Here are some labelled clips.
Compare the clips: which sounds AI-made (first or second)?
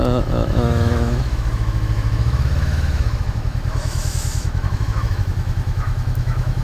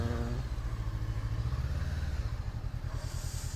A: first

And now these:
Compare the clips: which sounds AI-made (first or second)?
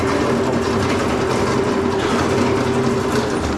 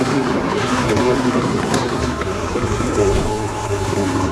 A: second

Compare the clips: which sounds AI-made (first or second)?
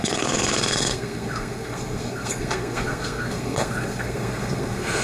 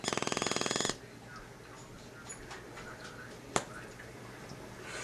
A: first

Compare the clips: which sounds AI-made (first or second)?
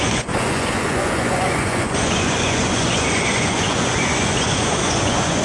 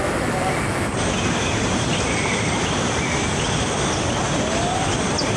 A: first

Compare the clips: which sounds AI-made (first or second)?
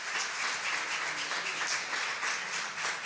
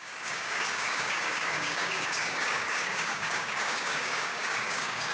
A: second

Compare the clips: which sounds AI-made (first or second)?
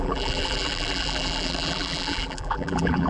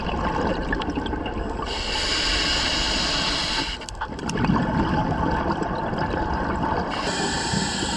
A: first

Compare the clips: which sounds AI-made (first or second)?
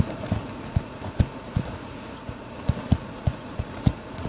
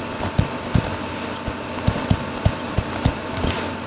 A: first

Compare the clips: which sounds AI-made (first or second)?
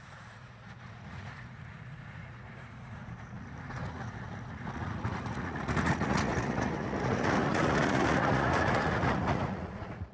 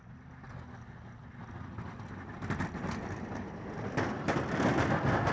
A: first